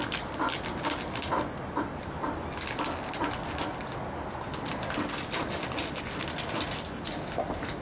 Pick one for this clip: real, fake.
real